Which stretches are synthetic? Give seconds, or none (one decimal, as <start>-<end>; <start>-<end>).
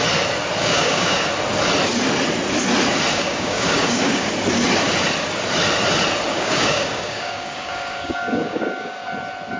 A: 0.6-1.3; 3.1-4.3; 6.3-9.1